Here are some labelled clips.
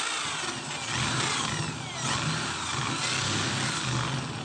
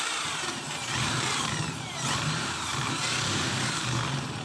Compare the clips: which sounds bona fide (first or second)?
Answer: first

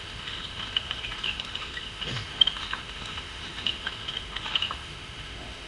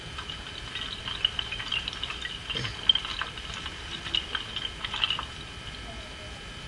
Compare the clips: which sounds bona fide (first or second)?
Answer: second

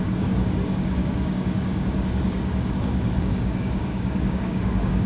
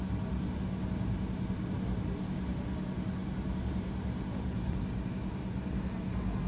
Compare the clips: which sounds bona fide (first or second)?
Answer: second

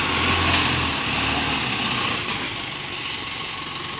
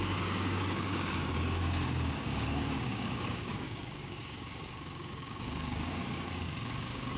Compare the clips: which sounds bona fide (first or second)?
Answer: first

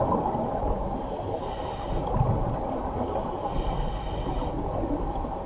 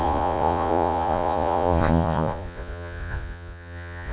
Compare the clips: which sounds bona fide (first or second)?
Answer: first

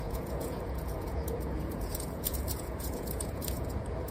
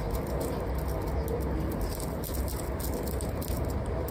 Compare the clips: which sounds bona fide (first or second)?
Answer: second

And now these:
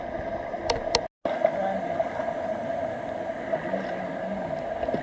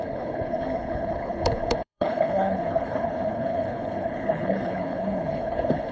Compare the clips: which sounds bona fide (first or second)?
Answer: first